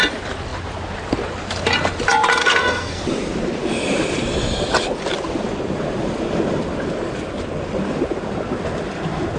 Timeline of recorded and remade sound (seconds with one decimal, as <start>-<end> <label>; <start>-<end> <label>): 0.0-2.4 recorded; 2.4-3.0 remade; 3.0-9.4 recorded